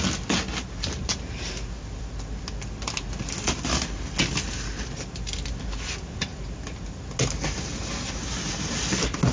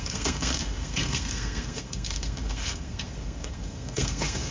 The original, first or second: first